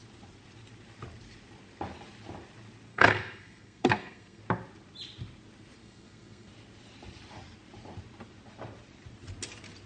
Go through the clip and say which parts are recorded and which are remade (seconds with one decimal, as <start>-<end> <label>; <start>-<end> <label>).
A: 0.0-2.9 recorded; 2.9-4.4 remade; 4.4-5.8 recorded; 5.8-6.5 remade; 6.5-9.9 recorded